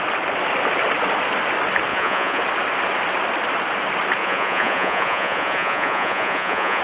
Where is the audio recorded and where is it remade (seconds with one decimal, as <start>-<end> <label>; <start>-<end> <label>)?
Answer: 0.0-1.9 recorded; 1.9-2.4 remade; 2.4-4.2 recorded; 4.2-6.8 remade